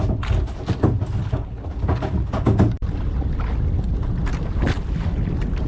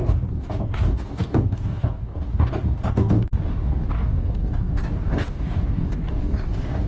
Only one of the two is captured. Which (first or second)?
first